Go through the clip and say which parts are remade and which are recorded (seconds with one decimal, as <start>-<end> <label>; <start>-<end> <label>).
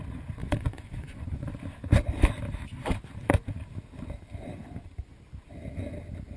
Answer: 0.0-0.4 recorded; 0.4-1.5 remade; 1.5-6.4 recorded